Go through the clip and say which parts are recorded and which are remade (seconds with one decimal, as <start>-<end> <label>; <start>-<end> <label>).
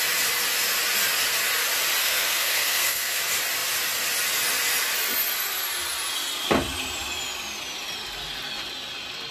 0.0-2.0 recorded; 2.0-3.2 remade; 3.2-9.3 recorded